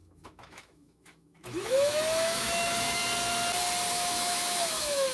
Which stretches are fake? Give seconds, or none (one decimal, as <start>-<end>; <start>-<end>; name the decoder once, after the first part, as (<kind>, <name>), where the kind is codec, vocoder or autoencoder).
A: 0.0-3.0 (autoencoder, DAC-VAE); 3.9-5.1